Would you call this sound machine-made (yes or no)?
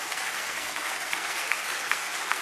yes